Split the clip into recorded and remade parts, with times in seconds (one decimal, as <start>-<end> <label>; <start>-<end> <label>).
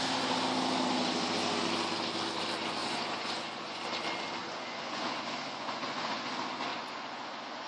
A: 0.0-2.8 recorded; 2.8-3.8 remade; 3.8-4.4 recorded; 4.4-6.3 remade; 6.3-6.7 recorded; 6.7-7.7 remade